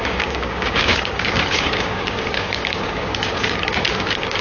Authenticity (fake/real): fake